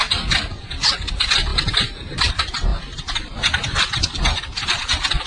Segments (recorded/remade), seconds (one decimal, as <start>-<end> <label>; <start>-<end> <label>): 0.0-1.5 recorded; 1.5-2.3 remade; 2.3-2.7 recorded; 2.7-4.2 remade; 4.2-5.3 recorded